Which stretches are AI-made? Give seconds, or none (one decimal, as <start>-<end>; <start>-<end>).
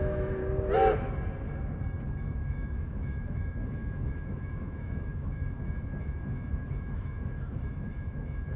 0.0-0.4; 2.2-8.6